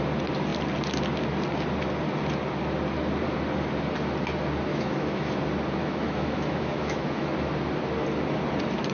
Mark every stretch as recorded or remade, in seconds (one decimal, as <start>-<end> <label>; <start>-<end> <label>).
0.0-4.7 recorded; 4.7-5.3 remade; 5.3-5.8 recorded; 5.8-7.3 remade; 7.3-8.9 recorded